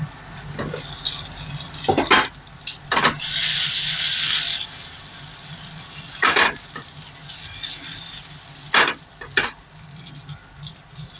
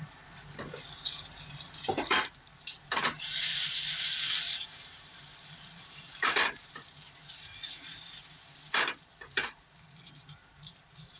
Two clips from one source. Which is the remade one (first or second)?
second